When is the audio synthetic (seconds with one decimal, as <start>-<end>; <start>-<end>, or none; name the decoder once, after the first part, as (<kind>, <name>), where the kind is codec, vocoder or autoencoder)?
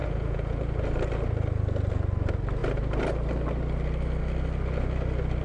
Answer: 0.0-0.6 (vocoder, Vocos)